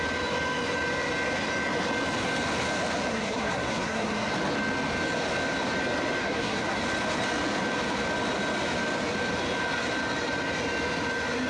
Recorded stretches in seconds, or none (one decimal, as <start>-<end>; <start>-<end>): 0.0-3.1; 4.3-6.2; 6.8-11.5